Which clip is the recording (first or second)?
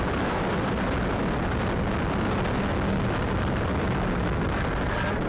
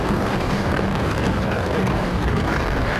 first